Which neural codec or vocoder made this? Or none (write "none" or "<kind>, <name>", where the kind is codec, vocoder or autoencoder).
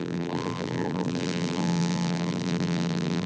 vocoder, BigVGAN v2